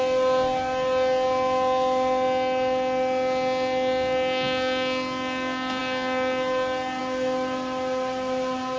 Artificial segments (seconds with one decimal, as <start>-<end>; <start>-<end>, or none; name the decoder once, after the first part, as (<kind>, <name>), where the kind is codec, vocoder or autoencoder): none